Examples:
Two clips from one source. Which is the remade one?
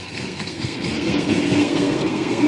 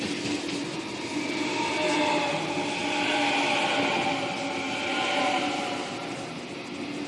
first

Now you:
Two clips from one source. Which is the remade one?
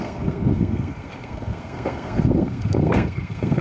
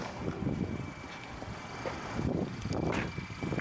first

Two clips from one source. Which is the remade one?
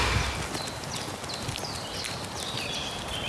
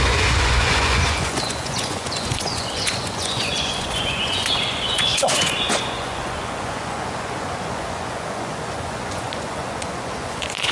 second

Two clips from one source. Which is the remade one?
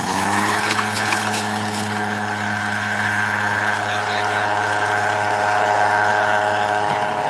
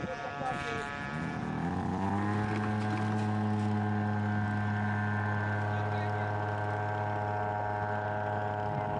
first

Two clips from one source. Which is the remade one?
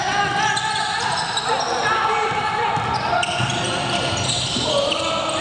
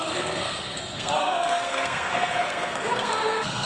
second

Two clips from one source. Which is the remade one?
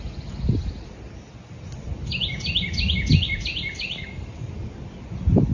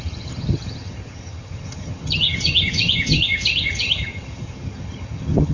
second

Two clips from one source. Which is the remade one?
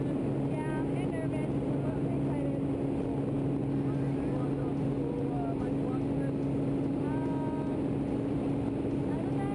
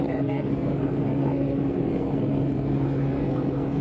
second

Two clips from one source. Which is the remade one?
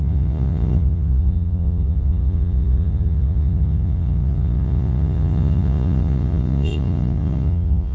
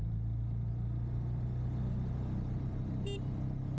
first